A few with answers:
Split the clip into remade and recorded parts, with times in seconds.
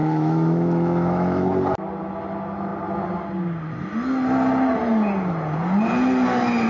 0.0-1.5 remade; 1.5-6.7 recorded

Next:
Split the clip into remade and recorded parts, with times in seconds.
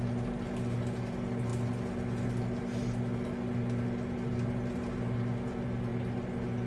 0.0-6.7 recorded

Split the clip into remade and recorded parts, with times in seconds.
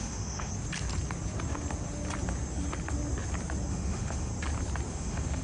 0.0-0.5 remade; 0.5-3.7 recorded; 3.7-4.3 remade; 4.3-4.9 recorded; 4.9-5.4 remade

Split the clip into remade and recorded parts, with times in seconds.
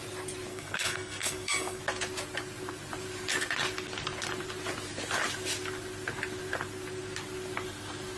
0.0-0.5 recorded; 0.5-1.8 remade; 1.8-8.2 recorded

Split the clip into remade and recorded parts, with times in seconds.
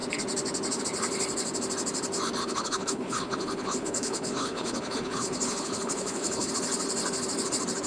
0.0-2.4 recorded; 2.4-6.5 remade; 6.5-7.9 recorded